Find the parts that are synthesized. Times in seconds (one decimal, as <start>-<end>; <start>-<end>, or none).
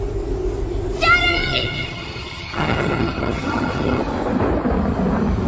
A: 1.3-4.0